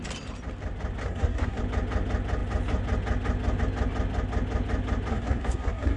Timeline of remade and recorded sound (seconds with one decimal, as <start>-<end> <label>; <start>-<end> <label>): 0.0-1.0 recorded; 1.0-1.6 remade; 1.6-5.1 recorded; 5.1-6.0 remade